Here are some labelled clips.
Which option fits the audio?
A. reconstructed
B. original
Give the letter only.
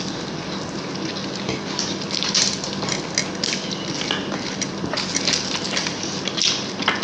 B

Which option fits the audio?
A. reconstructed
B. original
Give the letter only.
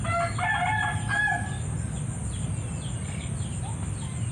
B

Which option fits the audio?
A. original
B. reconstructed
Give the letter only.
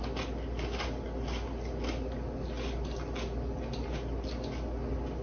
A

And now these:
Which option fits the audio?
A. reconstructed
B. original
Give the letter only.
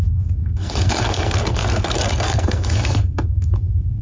A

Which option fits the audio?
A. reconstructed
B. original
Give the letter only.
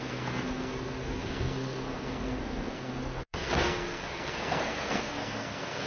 A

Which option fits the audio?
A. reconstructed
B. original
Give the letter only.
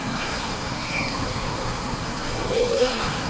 A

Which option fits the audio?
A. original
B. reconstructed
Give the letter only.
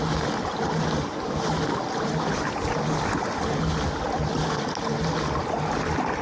A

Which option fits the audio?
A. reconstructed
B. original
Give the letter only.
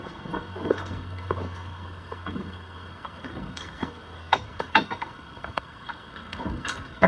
A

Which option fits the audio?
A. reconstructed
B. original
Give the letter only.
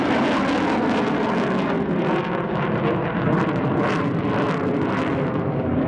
B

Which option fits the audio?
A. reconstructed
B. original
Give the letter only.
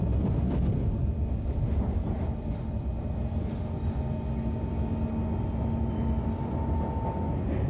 B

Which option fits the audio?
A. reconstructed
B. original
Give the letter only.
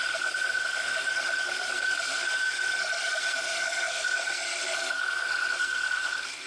A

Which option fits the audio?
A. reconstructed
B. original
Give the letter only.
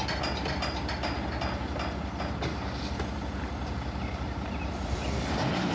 B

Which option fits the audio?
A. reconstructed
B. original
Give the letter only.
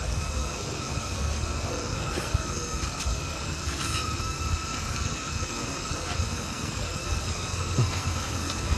A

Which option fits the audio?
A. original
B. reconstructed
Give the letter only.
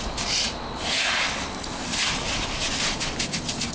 A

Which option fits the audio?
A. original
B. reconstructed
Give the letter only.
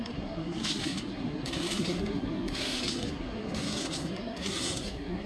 B